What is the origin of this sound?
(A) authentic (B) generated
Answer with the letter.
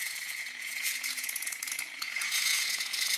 B